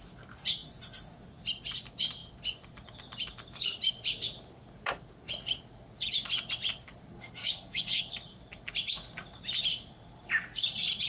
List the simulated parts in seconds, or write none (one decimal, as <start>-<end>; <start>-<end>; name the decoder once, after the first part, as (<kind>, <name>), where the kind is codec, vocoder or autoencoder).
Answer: 7.4-8.0 (codec, DAC)